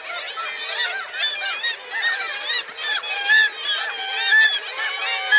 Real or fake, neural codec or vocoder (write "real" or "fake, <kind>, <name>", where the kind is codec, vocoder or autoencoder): real